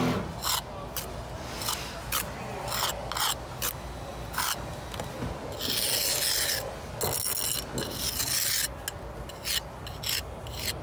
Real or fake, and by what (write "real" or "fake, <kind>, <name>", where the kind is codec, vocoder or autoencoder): real